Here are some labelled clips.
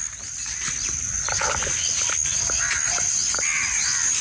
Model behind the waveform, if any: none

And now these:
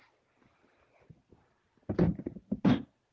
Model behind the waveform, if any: none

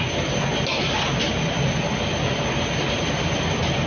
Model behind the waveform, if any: none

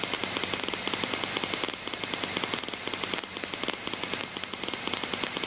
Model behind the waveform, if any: none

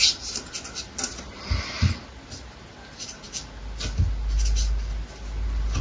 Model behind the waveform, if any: none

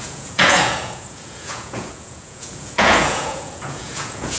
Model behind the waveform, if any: vocoder, Vocos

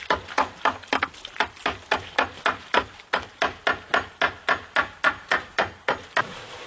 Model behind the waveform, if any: none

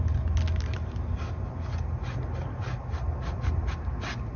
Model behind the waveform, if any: none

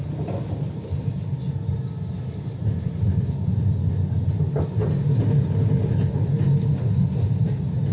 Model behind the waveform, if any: none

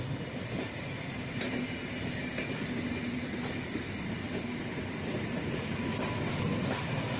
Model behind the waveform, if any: none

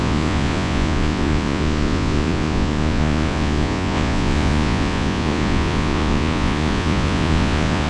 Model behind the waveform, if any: vocoder, Vocos